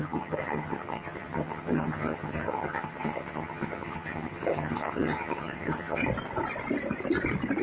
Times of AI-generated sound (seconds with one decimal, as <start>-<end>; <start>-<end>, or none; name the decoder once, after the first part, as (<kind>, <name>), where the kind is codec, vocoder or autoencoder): 0.0-6.0 (vocoder, HiFi-GAN)